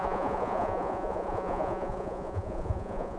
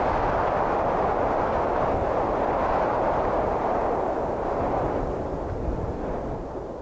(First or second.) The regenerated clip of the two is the first